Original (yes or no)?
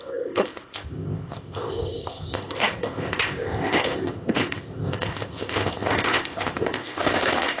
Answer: no